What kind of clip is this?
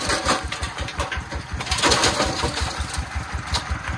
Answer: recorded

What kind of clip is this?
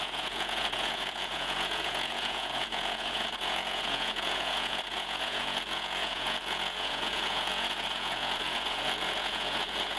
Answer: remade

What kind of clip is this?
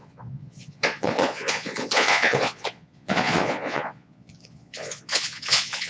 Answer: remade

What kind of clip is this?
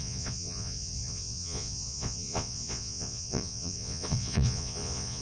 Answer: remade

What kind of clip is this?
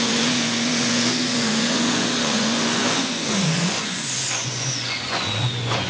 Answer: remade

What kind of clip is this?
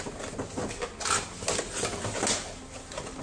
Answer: recorded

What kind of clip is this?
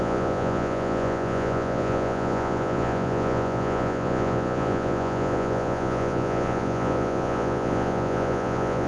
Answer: remade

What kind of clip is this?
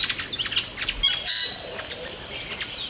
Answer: recorded